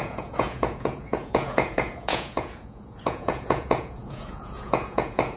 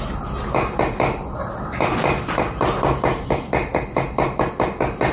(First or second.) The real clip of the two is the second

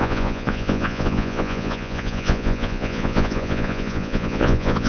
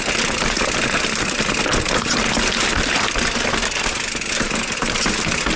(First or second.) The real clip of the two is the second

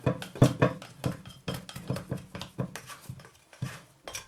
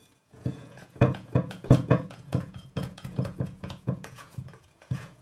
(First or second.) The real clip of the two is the first